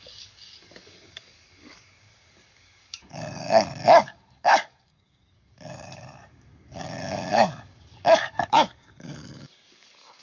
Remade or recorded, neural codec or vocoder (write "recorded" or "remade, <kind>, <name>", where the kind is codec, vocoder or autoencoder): remade, codec, DAC